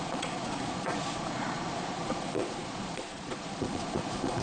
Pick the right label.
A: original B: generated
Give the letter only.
B